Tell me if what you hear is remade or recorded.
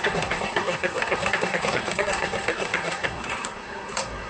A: remade